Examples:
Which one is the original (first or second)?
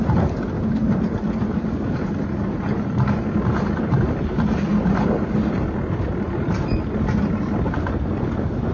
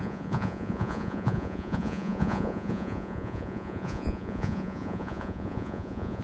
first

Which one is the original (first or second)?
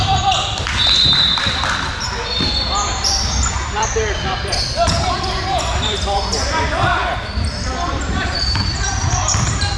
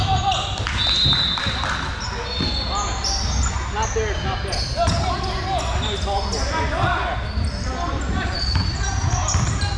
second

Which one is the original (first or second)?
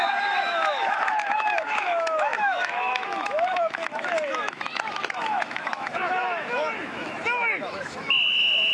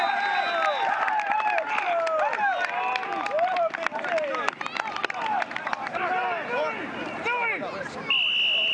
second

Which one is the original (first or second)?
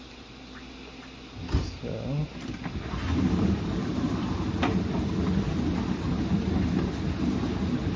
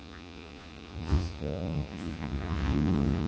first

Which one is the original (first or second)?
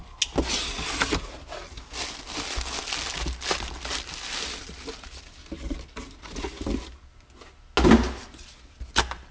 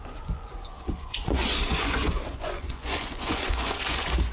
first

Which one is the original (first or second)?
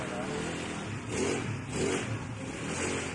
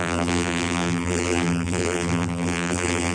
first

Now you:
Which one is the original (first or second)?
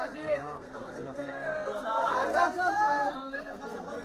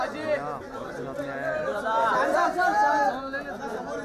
second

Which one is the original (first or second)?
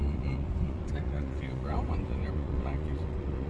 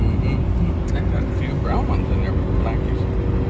second